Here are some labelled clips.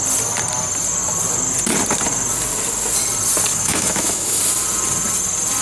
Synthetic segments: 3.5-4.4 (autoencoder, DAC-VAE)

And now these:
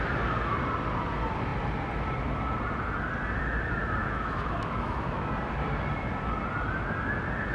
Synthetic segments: 4.0-5.3 (autoencoder, DAC-VAE)

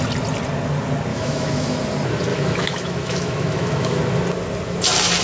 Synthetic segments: 1.1-1.8 (autoencoder, DAC-VAE); 2.3-4.0